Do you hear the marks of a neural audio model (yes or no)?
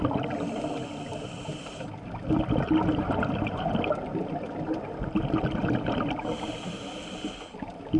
no